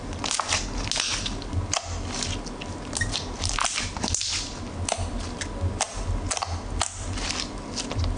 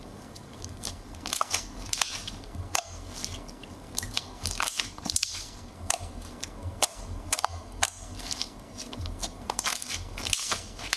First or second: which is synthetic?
second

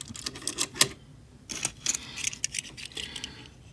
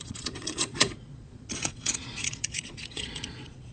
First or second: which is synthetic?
second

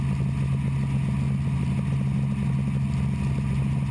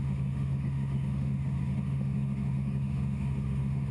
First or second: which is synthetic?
second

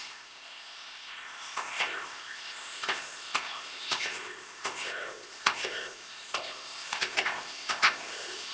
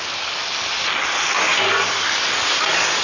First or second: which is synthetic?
first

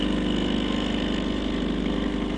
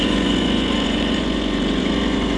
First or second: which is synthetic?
second